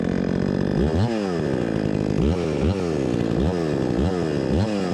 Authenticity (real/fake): real